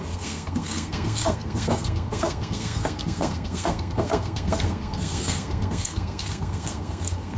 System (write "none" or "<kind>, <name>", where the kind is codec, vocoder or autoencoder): codec, SNAC